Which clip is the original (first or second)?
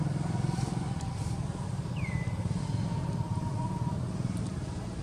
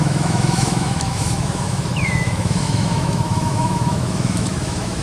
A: first